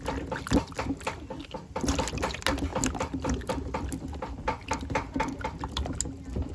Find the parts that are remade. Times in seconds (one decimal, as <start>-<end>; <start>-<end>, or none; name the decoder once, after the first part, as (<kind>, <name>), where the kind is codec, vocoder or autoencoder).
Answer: none